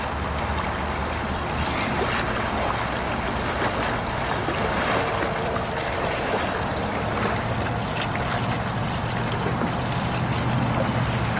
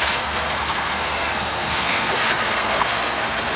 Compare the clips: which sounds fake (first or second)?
second